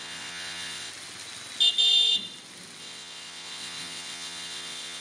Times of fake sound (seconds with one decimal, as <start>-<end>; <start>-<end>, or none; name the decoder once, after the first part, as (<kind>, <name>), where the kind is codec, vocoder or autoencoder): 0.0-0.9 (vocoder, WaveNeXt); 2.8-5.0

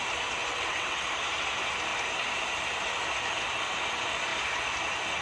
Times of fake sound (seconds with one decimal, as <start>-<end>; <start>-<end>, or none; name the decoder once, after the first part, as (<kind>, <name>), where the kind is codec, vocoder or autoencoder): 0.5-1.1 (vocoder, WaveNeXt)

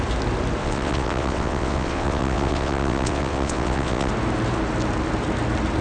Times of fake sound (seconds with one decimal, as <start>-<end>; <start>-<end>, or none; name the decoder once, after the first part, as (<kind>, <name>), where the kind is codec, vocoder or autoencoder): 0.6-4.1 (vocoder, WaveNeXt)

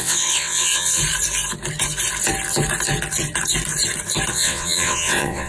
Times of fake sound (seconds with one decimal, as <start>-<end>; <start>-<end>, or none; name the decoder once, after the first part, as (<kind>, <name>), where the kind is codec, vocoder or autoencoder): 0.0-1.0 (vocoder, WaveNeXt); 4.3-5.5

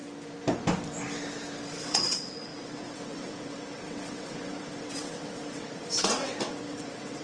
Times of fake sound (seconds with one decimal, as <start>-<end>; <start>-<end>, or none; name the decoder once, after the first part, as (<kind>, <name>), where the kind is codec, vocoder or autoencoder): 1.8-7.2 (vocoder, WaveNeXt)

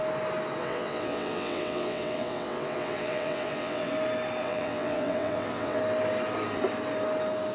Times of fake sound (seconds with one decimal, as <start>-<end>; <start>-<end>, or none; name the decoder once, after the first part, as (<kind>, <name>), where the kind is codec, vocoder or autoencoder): 0.6-3.9 (vocoder, WaveNeXt); 4.4-5.8

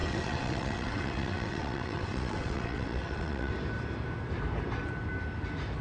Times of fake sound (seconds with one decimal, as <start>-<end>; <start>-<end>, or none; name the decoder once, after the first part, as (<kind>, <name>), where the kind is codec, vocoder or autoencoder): 0.0-3.5 (vocoder, WaveNeXt)

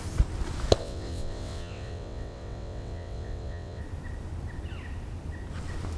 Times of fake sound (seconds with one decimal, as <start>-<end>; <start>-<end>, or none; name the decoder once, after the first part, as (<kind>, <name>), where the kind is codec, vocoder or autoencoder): 0.8-3.8 (vocoder, WaveNeXt)